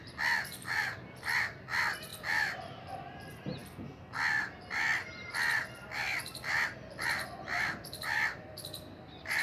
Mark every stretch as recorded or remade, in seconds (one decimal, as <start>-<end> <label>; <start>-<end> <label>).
0.0-9.4 recorded